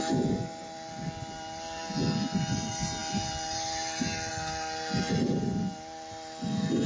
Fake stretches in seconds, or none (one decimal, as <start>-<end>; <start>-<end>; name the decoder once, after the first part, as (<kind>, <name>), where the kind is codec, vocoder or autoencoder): none